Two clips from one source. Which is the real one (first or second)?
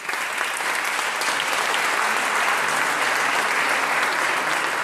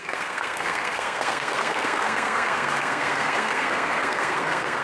first